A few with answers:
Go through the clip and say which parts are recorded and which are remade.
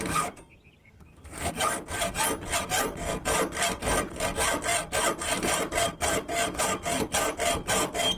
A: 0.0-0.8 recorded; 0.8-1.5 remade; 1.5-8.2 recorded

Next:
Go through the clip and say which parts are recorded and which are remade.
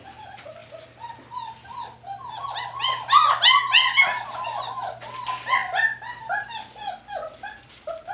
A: 0.0-5.6 recorded; 5.6-6.4 remade; 6.4-8.1 recorded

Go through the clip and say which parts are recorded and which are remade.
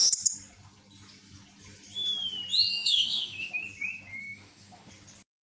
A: 0.0-2.7 recorded; 2.7-3.5 remade; 3.5-4.1 recorded; 4.1-4.9 remade; 4.9-5.4 recorded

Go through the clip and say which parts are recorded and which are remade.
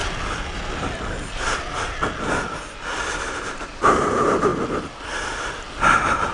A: 0.0-3.4 recorded; 3.4-4.5 remade; 4.5-5.7 recorded; 5.7-6.3 remade